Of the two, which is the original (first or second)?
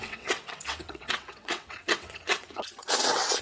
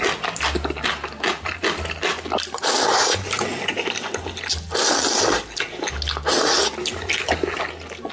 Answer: second